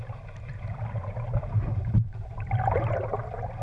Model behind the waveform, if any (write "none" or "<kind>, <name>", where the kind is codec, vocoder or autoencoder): vocoder, BigVGAN v2